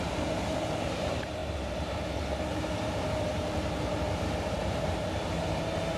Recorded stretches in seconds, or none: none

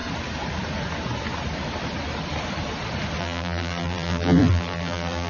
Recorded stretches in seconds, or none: 0.0-3.2

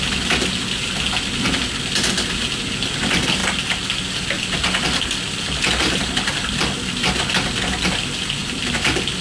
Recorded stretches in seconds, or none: 0.0-3.4; 4.2-8.4

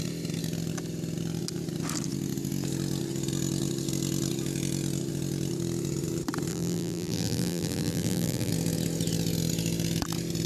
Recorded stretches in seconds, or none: 0.0-6.5; 8.5-10.5

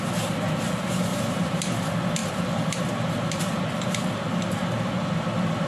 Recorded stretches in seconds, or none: 0.0-1.1; 1.8-5.7

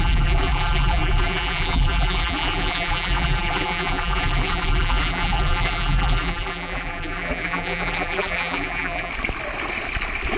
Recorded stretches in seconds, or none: 9.1-10.4

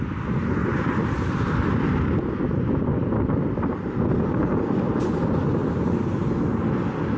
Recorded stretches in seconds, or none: 0.0-0.7; 5.0-7.2